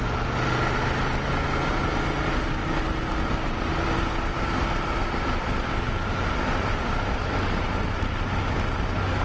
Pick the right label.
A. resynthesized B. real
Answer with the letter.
B